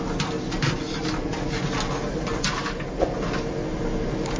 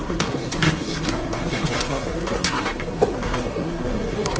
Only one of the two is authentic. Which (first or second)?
first